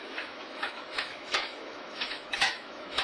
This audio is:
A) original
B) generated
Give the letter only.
B